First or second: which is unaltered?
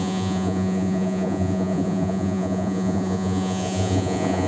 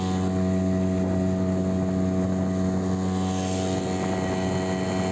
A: second